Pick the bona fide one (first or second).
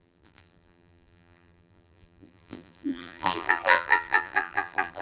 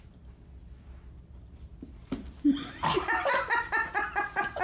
second